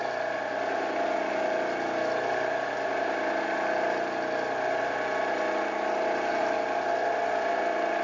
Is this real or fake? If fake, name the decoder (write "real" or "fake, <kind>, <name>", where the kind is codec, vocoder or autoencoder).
real